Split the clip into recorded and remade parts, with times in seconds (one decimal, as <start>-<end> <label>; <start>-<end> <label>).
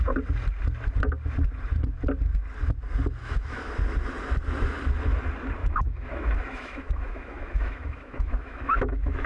0.0-3.2 recorded; 3.2-3.7 remade; 3.7-5.6 recorded; 5.6-9.3 remade